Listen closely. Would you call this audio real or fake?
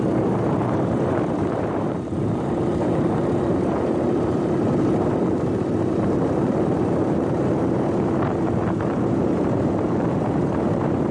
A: fake